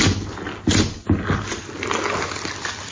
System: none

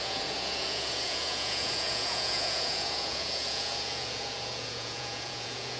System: vocoder, Vocos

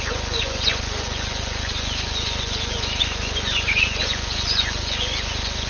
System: vocoder, Vocos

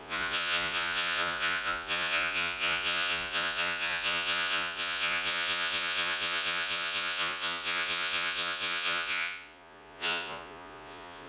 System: vocoder, Vocos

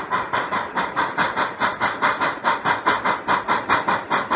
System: none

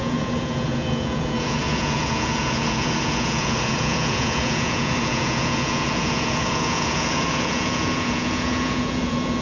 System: vocoder, Vocos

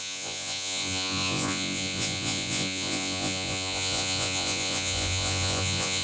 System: vocoder, Vocos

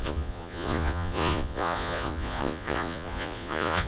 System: vocoder, Vocos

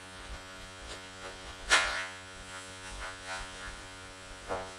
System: vocoder, Vocos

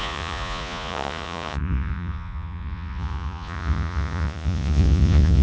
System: vocoder, Vocos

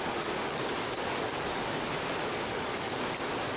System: none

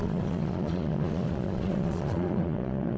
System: vocoder, Vocos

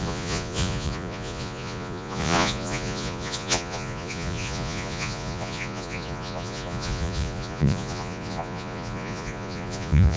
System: vocoder, Vocos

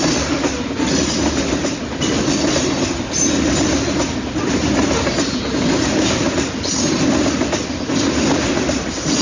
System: none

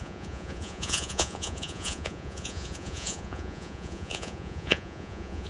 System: vocoder, Vocos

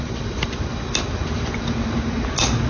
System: none